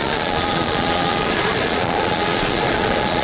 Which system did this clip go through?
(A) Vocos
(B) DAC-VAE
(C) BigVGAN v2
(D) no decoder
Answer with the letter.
A